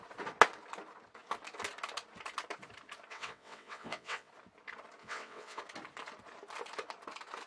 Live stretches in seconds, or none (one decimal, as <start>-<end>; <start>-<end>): 0.0-3.1; 4.3-5.0; 5.6-7.5